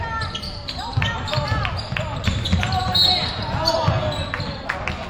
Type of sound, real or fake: real